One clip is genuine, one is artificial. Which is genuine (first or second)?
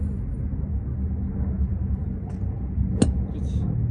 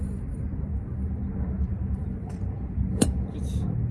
first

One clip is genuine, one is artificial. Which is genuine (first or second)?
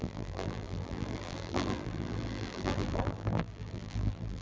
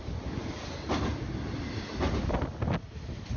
second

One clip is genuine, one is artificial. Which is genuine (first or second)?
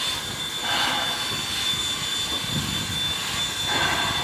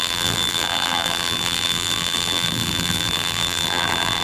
first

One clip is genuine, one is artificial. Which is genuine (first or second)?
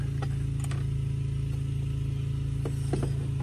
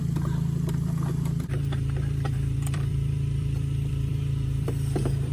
first